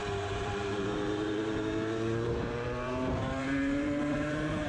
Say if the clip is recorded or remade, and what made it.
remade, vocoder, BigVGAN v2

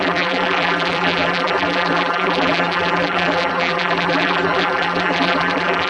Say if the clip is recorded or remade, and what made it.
remade, vocoder, BigVGAN v2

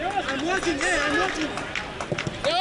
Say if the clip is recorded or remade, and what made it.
recorded